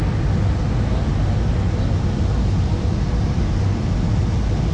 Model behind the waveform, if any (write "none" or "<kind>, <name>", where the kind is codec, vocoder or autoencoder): none